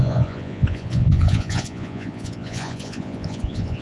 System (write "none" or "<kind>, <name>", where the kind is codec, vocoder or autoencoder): vocoder, Vocos